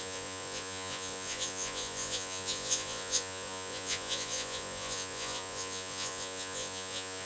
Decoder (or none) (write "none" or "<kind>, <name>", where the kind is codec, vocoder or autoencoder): vocoder, Vocos